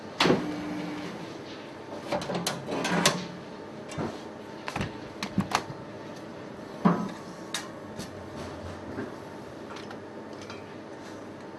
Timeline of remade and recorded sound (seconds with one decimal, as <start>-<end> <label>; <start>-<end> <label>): 0.0-6.3 recorded; 6.3-7.1 remade; 7.1-9.0 recorded; 9.0-9.7 remade; 9.7-11.6 recorded